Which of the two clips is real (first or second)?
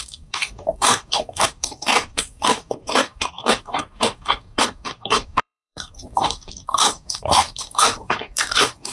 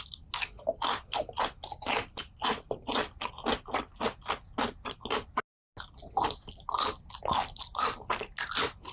second